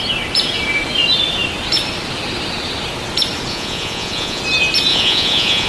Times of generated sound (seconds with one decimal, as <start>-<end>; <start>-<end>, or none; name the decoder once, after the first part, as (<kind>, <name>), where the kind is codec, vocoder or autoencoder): 3.5-4.4 (vocoder, Vocos); 4.9-5.7

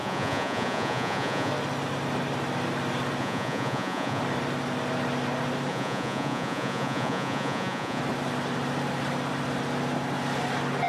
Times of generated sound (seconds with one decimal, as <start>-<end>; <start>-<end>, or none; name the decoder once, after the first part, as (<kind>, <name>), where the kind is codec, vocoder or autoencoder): 0.0-1.5 (vocoder, Vocos); 3.2-4.2; 5.7-8.0

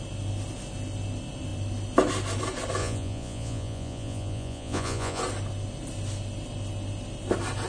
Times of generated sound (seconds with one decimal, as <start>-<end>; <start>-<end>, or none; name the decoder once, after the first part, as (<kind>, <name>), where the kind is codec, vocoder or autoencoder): 2.8-5.2 (vocoder, Vocos)

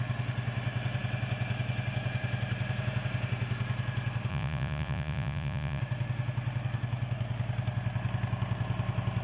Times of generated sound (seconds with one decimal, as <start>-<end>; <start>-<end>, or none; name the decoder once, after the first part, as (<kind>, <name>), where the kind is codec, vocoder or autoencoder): 4.3-5.8 (vocoder, Vocos)